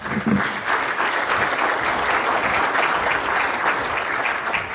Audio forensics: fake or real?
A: real